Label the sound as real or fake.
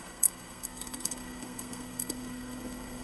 fake